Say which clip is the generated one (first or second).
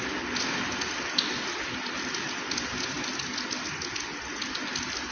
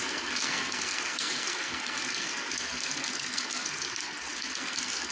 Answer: second